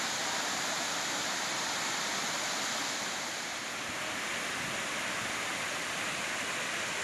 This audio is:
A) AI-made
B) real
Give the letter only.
B